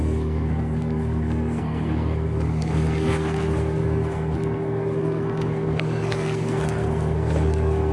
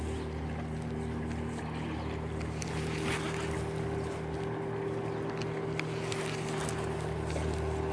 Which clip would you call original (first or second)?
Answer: second